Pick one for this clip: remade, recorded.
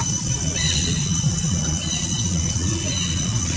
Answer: remade